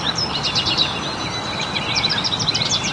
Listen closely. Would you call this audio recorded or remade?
recorded